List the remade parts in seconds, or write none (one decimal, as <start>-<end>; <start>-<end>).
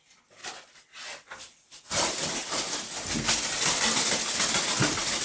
none